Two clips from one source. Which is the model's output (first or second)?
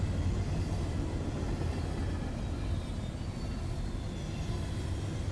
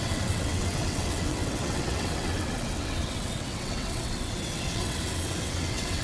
second